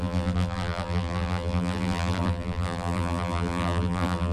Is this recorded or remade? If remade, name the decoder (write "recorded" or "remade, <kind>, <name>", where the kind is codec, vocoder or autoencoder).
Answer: remade, vocoder, BigVGAN v2